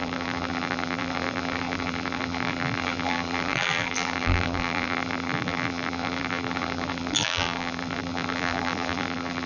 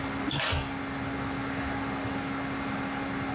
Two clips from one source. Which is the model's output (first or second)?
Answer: first